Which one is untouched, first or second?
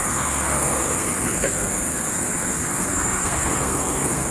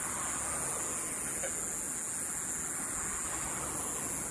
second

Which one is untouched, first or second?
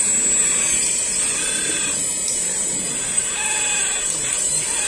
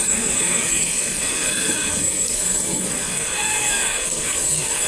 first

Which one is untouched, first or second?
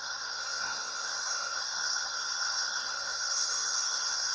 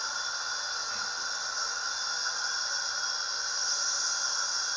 second